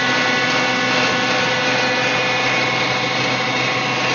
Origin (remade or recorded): recorded